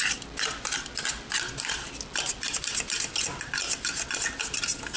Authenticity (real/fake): real